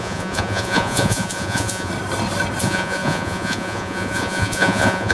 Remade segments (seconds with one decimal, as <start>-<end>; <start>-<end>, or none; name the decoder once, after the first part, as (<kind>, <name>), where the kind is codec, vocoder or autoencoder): 0.0-1.9 (vocoder, Vocos); 2.6-5.1